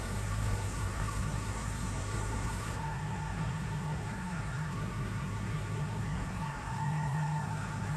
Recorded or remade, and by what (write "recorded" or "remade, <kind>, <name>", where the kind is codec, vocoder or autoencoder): remade, codec, SNAC